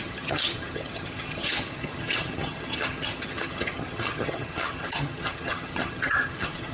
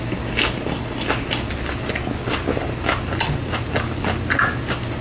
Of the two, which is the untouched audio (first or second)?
second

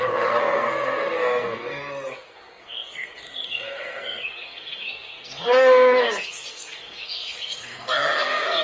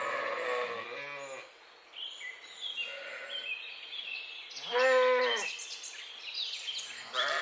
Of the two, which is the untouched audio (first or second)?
second